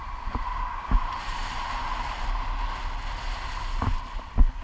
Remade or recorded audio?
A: recorded